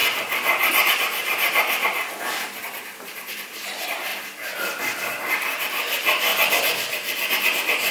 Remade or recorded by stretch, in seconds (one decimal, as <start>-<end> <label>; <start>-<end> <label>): 0.0-2.2 recorded; 2.2-6.3 remade; 6.3-7.3 recorded; 7.3-7.9 remade